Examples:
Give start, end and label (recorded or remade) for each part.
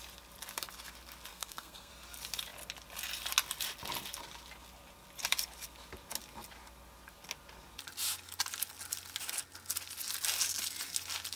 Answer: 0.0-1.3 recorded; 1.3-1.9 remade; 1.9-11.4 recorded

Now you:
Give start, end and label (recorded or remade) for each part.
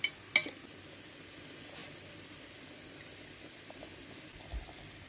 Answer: 0.0-5.1 recorded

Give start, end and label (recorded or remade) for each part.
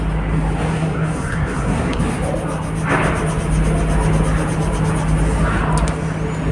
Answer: 0.0-0.7 recorded; 0.7-2.0 remade; 2.0-6.5 recorded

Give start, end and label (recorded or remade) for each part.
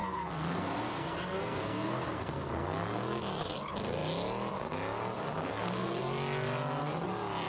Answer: 0.0-3.2 remade; 3.2-5.4 recorded; 5.4-6.0 remade; 6.0-7.5 recorded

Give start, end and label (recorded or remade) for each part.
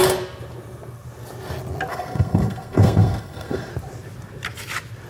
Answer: 0.0-1.9 recorded; 1.9-3.7 remade; 3.7-5.1 recorded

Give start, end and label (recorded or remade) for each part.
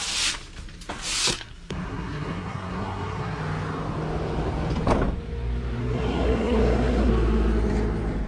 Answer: 0.0-1.2 recorded; 1.2-3.4 remade; 3.4-5.8 recorded; 5.8-7.1 remade; 7.1-8.3 recorded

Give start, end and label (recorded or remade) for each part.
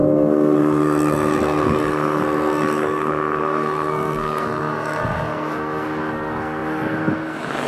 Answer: 0.0-7.7 remade